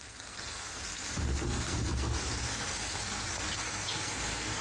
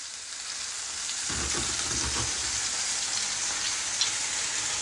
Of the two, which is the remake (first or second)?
first